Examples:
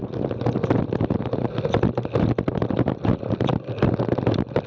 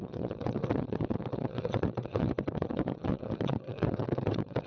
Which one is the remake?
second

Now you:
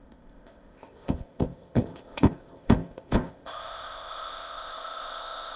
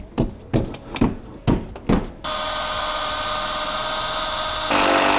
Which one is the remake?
first